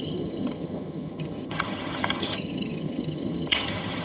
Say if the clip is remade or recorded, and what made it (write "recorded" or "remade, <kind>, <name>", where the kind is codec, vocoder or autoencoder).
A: remade, vocoder, HiFi-GAN